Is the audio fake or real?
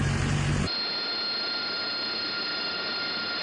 real